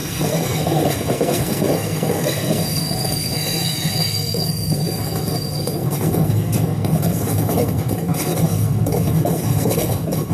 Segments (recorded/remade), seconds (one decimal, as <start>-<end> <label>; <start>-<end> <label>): 0.0-10.3 remade